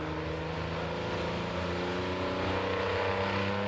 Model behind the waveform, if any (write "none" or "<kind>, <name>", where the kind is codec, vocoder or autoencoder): none